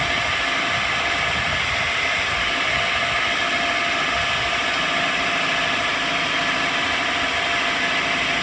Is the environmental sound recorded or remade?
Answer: recorded